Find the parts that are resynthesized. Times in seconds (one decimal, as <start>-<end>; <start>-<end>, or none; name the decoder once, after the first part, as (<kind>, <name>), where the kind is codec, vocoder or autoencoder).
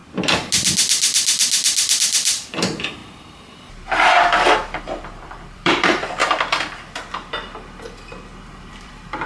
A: 2.0-3.0 (vocoder, BigVGAN v2); 4.8-6.2; 8.7-9.3